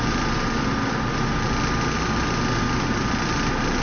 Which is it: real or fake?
real